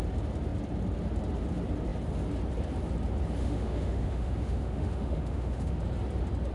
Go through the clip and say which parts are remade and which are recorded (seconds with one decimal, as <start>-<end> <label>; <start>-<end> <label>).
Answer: 0.0-3.4 recorded; 3.4-5.8 remade; 5.8-6.5 recorded